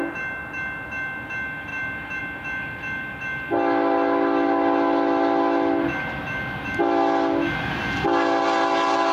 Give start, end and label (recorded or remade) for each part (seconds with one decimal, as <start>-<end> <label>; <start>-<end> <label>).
0.0-9.1 recorded

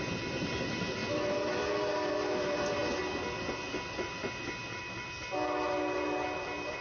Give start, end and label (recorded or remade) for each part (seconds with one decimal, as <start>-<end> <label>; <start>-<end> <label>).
0.0-6.8 recorded

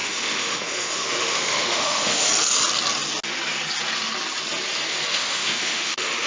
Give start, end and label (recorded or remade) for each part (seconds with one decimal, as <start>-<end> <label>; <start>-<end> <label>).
0.0-2.3 remade; 2.3-5.1 recorded; 5.1-6.3 remade

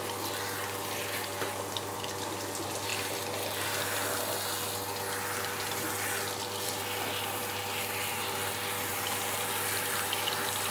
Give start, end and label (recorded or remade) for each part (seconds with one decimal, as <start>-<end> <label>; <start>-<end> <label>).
0.0-10.7 recorded

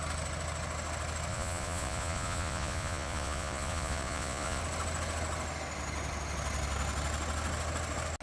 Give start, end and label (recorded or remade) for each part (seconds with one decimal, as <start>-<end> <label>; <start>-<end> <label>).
0.0-1.3 recorded; 1.3-4.6 remade; 4.6-8.2 recorded